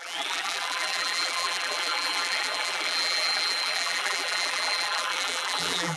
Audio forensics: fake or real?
fake